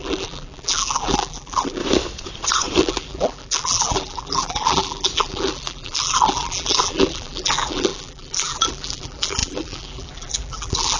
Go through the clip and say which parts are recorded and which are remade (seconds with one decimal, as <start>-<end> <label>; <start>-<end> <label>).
0.0-1.8 remade; 1.8-2.8 recorded; 2.8-11.0 remade